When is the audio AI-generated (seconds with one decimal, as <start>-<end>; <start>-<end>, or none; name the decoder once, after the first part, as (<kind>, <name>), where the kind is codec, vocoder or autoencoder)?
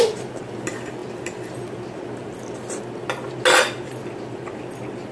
none